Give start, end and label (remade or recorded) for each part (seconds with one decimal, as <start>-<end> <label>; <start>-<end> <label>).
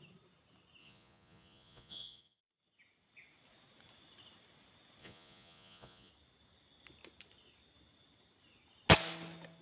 0.0-0.8 recorded; 0.8-2.4 remade; 2.4-5.0 recorded; 5.0-6.1 remade; 6.1-9.6 recorded